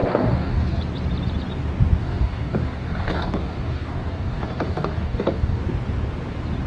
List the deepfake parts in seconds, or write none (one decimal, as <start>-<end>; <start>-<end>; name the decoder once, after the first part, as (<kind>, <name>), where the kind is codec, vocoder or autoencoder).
0.0-0.8 (codec, DAC); 2.0-5.6